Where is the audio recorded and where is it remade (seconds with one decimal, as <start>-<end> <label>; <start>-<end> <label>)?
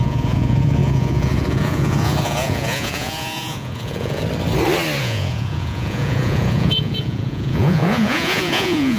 0.0-4.2 remade; 4.2-5.0 recorded; 5.0-9.0 remade